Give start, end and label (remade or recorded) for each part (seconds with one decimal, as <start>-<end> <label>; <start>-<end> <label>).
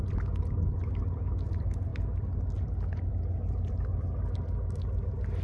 0.0-5.4 recorded